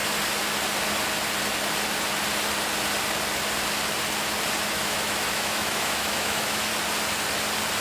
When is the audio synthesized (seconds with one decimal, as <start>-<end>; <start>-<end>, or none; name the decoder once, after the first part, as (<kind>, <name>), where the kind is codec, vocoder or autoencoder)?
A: 4.7-6.7 (autoencoder, DAC-VAE)